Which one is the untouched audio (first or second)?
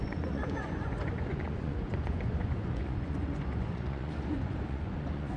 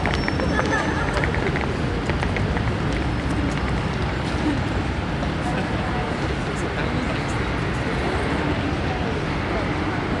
second